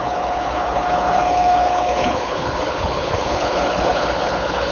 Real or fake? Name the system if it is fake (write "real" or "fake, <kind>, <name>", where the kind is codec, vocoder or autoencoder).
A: fake, codec, HILCodec